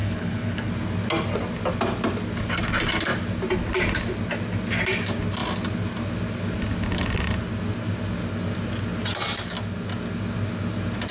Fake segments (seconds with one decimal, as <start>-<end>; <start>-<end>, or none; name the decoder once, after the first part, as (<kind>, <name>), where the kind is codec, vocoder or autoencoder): 0.0-0.7 (codec, HILCodec)